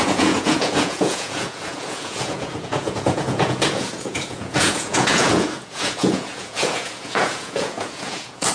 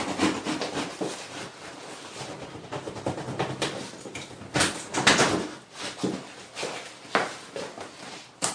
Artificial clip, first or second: first